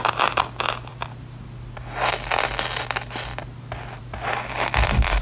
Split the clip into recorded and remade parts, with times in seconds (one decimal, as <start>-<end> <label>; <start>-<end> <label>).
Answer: 0.0-5.2 recorded